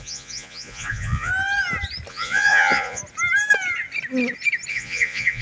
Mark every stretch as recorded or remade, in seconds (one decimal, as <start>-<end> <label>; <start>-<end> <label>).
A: 0.0-1.3 remade; 1.3-2.1 recorded; 2.1-3.0 remade; 3.0-4.7 recorded; 4.7-5.4 remade